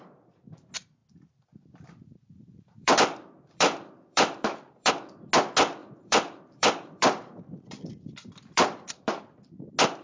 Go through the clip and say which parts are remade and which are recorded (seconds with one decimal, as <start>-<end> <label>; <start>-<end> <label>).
0.0-1.0 recorded; 1.0-4.9 remade; 4.9-5.8 recorded; 5.8-9.2 remade; 9.2-10.0 recorded